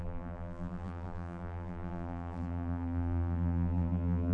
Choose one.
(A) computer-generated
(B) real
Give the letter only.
A